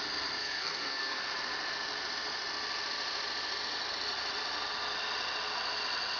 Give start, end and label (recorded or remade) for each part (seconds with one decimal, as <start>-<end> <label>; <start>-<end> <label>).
0.0-0.4 recorded; 0.4-1.2 remade; 1.2-6.2 recorded